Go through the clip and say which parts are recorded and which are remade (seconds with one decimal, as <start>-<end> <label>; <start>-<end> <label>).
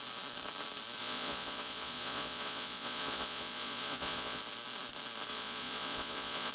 0.0-1.0 recorded; 1.0-4.4 remade; 4.4-5.3 recorded; 5.3-6.5 remade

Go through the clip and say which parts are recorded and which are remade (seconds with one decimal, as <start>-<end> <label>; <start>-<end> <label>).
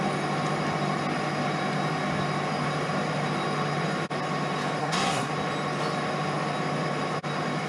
0.0-4.8 recorded; 4.8-5.3 remade; 5.3-7.7 recorded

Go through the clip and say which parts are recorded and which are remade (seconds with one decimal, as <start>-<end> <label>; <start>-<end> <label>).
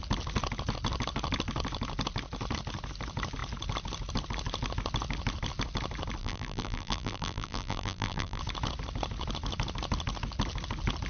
0.0-6.2 recorded; 6.2-8.4 remade; 8.4-11.1 recorded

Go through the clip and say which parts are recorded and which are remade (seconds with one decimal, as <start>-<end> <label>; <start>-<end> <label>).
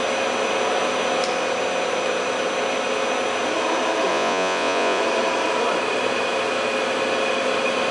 0.0-4.1 recorded; 4.1-5.0 remade; 5.0-7.9 recorded